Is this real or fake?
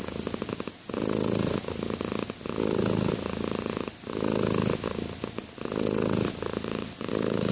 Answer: real